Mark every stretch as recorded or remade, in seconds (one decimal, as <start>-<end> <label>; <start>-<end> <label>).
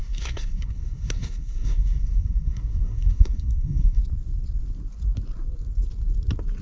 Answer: 0.0-4.0 remade; 4.0-6.6 recorded